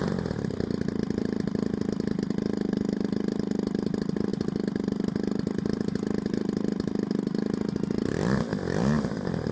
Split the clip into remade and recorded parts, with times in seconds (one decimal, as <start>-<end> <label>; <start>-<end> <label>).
0.0-9.5 recorded